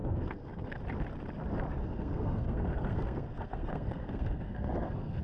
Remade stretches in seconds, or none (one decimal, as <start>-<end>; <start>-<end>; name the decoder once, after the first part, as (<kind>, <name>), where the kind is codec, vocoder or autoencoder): 0.0-0.8 (codec, SNAC); 1.8-5.2